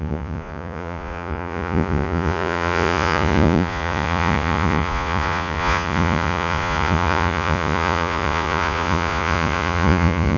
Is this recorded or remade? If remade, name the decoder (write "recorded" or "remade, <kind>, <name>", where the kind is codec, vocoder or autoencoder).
remade, vocoder, Vocos